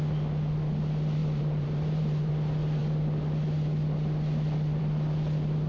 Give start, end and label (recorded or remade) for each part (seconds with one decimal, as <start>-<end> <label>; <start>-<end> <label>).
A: 0.0-1.2 recorded; 1.2-2.3 remade; 2.3-5.7 recorded